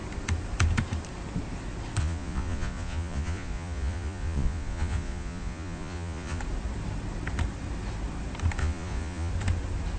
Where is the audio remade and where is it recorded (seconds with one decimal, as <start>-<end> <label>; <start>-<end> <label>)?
0.0-2.0 recorded; 2.0-6.4 remade; 6.4-8.6 recorded; 8.6-9.3 remade; 9.3-10.0 recorded